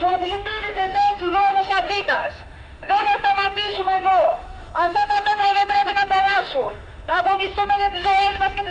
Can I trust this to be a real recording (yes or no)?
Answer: no